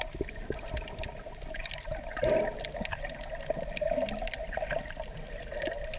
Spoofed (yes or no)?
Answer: no